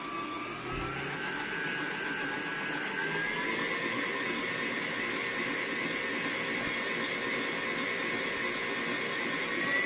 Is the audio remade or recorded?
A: recorded